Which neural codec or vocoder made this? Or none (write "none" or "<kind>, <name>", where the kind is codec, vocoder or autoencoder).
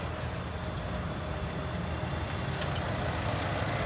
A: none